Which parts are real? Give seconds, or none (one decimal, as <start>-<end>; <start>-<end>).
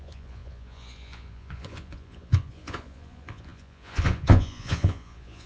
none